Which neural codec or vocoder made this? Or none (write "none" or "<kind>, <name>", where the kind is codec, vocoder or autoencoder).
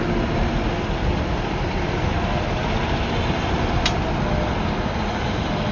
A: none